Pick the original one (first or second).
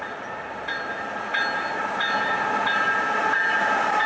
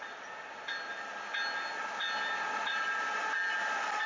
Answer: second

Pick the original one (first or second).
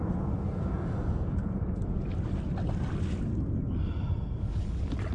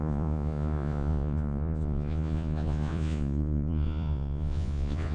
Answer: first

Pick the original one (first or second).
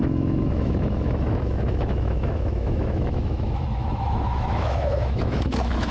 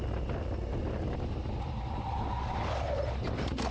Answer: second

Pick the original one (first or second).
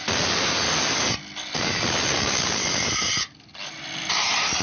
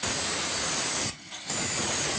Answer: first